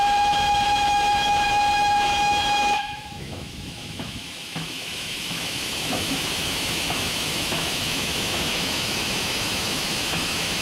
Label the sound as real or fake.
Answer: fake